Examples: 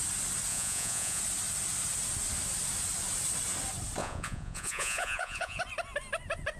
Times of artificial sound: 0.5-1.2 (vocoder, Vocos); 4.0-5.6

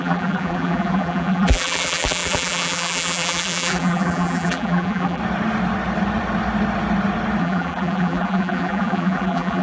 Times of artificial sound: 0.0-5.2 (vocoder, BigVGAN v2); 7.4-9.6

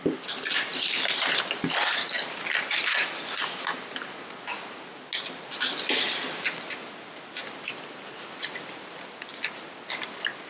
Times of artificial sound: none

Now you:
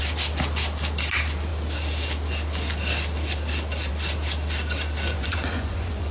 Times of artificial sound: 5.1-6.1 (vocoder, Vocos)

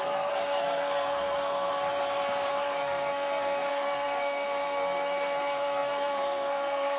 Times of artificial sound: 0.0-1.9 (codec, SNAC); 2.5-7.0

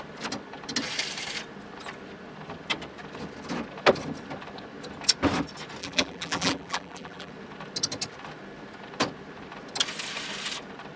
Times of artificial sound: 5.8-7.3 (vocoder, BigVGAN v2)

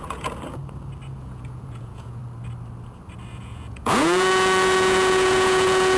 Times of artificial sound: 0.0-0.6 (vocoder, Vocos); 1.2-2.2; 3.3-6.0

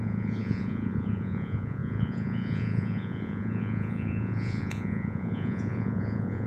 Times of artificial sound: 0.0-6.5 (vocoder, Vocos)